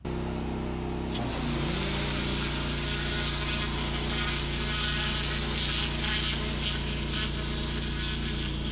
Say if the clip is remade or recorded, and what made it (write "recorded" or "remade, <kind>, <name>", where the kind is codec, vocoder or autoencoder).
recorded